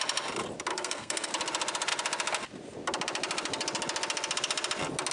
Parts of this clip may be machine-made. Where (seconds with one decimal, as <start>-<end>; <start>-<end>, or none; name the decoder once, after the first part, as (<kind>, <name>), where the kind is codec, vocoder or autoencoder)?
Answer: 0.7-1.3 (codec, SNAC)